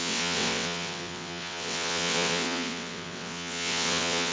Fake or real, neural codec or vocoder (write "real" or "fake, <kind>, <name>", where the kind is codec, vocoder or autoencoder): fake, vocoder, WaveNeXt